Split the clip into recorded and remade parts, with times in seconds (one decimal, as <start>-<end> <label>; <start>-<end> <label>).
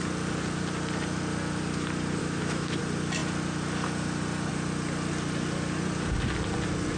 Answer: 0.0-2.2 recorded; 2.2-2.8 remade; 2.8-7.0 recorded